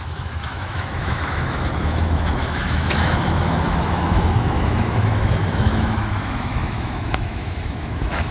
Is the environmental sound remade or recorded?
remade